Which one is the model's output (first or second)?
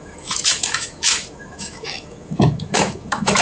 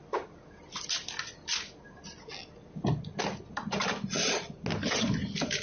first